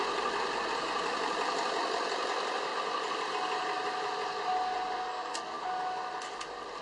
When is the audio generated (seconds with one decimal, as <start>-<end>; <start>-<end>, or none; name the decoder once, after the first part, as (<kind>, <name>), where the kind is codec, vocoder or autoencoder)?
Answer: 5.0-5.6 (codec, SNAC)